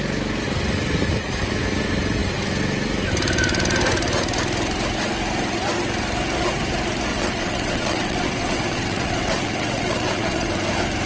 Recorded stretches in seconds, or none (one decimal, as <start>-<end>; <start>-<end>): 0.0-7.1; 10.5-11.1